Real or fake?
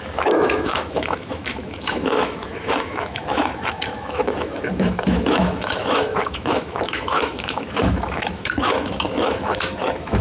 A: fake